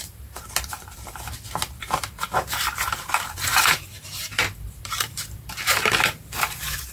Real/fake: fake